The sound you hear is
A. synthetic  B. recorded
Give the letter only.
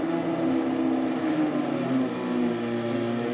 B